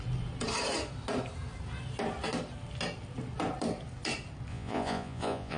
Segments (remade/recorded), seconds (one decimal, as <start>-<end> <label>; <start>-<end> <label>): 0.0-4.5 recorded; 4.5-5.6 remade